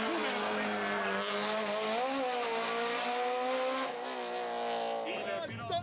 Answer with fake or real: real